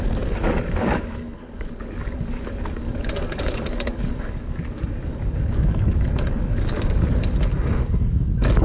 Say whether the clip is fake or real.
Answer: fake